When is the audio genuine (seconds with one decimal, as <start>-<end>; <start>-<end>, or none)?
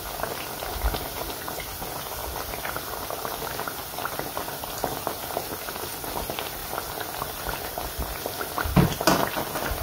0.0-9.8